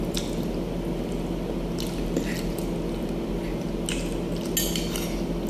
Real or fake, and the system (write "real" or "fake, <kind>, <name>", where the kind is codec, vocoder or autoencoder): real